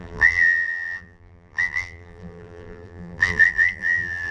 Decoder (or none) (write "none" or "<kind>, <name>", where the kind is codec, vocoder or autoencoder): vocoder, BigVGAN v2